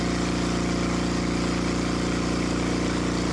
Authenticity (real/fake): real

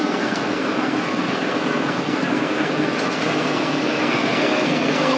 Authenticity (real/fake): fake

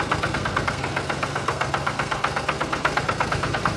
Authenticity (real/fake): fake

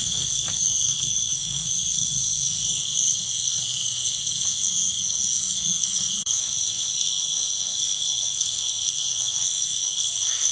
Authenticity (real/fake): fake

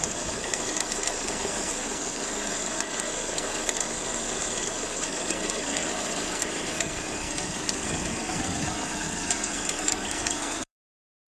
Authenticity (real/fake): fake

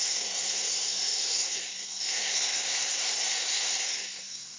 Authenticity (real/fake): fake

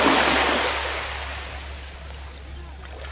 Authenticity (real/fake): real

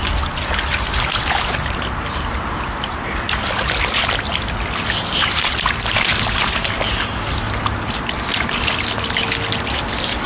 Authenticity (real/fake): real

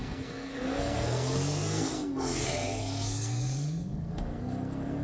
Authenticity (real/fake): fake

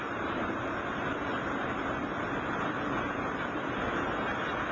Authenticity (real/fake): real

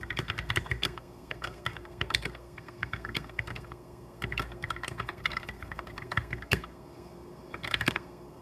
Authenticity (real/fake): fake